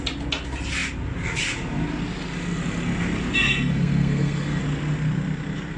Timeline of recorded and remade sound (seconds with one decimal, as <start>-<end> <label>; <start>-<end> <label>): 0.0-3.4 recorded; 3.4-4.6 remade; 4.6-5.8 recorded